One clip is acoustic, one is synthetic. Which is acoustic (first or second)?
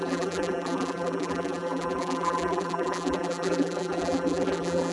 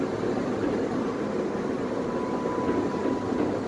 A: second